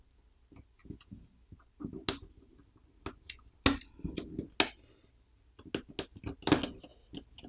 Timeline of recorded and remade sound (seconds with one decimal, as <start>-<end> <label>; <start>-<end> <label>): 0.0-0.8 recorded; 0.8-1.3 remade; 1.3-7.5 recorded